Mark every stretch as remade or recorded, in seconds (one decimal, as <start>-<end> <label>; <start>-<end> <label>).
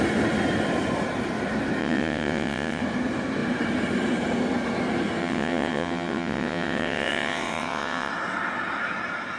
0.0-1.8 recorded; 1.8-2.8 remade; 2.8-5.2 recorded; 5.2-8.1 remade; 8.1-9.4 recorded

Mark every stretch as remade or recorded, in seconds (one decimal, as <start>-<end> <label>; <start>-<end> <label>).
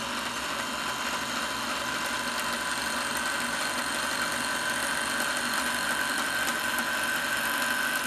0.0-8.1 recorded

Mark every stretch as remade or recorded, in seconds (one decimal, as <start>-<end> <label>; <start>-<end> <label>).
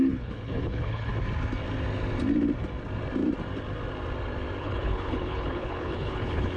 0.0-1.1 remade; 1.1-4.6 recorded; 4.6-6.6 remade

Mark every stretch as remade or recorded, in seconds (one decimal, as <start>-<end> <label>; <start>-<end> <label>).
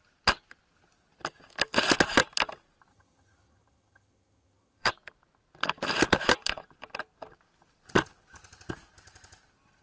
0.0-2.9 recorded; 2.9-4.9 remade; 4.9-9.8 recorded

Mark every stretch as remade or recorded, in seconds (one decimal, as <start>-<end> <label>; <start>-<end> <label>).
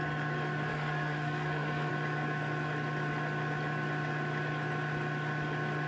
0.0-0.7 recorded; 0.7-1.9 remade; 1.9-5.9 recorded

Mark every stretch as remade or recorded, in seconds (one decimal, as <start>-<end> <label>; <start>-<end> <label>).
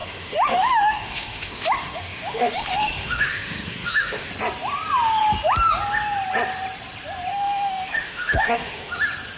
0.0-4.3 remade; 4.3-7.3 recorded; 7.3-8.9 remade; 8.9-9.4 recorded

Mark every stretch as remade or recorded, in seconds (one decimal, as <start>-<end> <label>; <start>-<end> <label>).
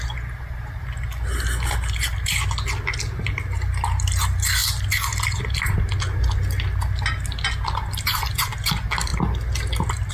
0.0-10.1 recorded